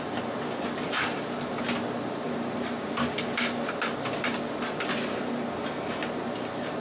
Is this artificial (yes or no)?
no